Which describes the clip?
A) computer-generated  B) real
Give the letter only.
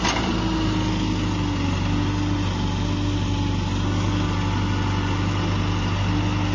B